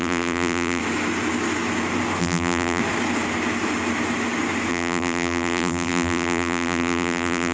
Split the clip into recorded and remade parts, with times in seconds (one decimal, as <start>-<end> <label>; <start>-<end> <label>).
0.0-0.8 remade; 0.8-2.2 recorded; 2.2-2.8 remade; 2.8-4.7 recorded; 4.7-7.5 remade